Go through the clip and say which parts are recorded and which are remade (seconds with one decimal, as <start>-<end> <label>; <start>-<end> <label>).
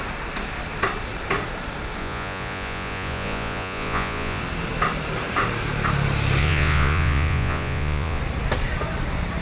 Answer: 0.0-2.0 recorded; 2.0-4.4 remade; 4.4-6.4 recorded; 6.4-8.2 remade; 8.2-9.4 recorded